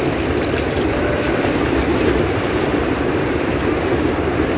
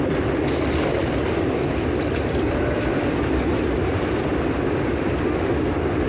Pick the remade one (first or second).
first